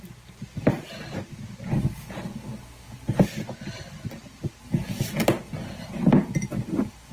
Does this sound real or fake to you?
real